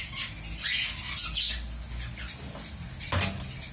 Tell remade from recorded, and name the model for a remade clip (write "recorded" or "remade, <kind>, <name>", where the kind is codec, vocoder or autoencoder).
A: recorded